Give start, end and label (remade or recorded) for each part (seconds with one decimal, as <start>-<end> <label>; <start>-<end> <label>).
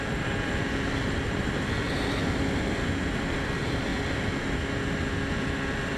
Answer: 0.0-2.2 remade; 2.2-3.3 recorded; 3.3-3.9 remade; 3.9-5.1 recorded; 5.1-6.0 remade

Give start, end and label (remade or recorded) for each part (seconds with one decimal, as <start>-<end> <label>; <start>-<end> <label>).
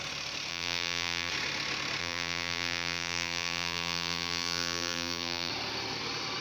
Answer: 0.0-0.5 recorded; 0.5-1.3 remade; 1.3-2.0 recorded; 2.0-5.5 remade; 5.5-6.4 recorded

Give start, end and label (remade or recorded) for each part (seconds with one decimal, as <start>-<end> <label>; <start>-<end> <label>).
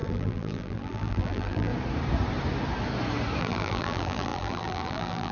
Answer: 0.0-1.7 remade; 1.7-3.4 recorded; 3.4-5.3 remade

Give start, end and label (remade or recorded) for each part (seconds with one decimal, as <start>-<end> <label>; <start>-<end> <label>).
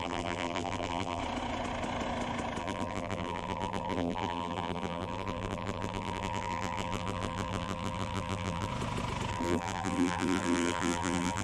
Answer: 0.0-1.2 remade; 1.2-2.6 recorded; 2.6-8.7 remade; 8.7-9.3 recorded; 9.3-11.4 remade